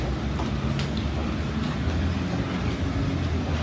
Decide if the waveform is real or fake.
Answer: real